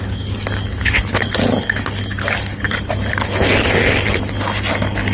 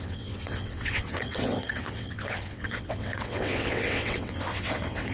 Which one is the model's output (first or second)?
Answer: second